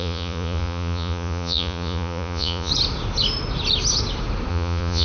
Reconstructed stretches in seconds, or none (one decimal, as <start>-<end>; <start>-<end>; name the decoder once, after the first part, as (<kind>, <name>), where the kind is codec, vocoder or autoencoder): 0.0-2.7 (vocoder, Vocos); 4.5-5.0